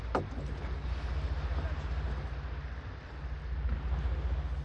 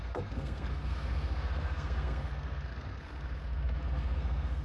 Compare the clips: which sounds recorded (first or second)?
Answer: first